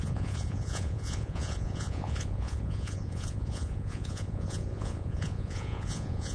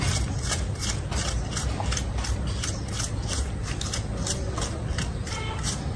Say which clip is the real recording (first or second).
second